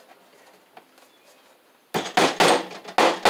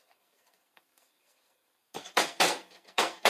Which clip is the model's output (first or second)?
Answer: second